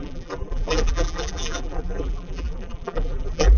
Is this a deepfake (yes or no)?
yes